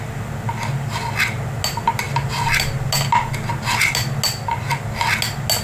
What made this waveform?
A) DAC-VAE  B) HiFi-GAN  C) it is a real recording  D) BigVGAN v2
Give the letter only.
C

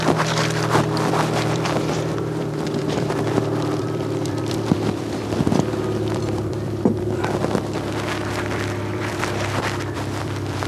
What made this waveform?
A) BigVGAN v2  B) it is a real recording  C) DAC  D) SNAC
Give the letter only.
A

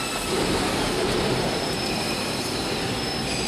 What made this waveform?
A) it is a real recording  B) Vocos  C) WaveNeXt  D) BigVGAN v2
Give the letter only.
A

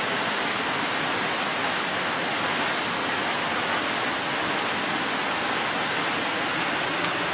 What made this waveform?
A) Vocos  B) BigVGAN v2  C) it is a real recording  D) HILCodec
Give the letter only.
C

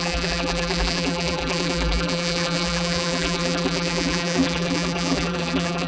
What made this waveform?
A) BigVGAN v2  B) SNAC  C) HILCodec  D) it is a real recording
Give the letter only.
A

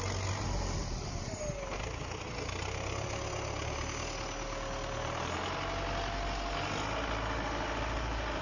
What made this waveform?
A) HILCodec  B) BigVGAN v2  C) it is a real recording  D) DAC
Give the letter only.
C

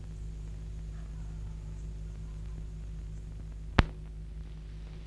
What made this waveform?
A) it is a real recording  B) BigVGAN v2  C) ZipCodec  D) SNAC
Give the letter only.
A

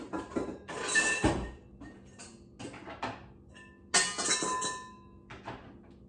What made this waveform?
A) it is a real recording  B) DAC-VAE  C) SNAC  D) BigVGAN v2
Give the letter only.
A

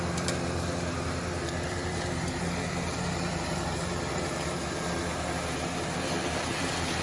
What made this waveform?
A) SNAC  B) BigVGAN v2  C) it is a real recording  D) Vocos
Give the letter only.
B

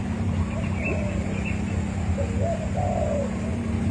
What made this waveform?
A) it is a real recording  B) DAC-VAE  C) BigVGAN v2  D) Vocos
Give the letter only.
A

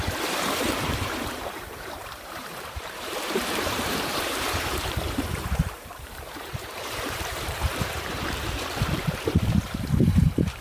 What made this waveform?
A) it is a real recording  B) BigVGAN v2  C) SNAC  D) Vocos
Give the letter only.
B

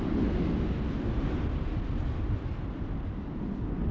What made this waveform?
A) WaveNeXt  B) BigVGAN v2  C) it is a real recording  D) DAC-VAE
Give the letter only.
C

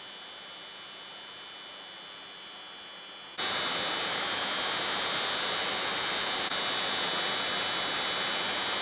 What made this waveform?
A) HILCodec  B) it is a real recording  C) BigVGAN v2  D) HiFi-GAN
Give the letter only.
B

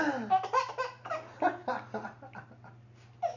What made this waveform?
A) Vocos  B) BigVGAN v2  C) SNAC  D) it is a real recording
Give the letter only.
D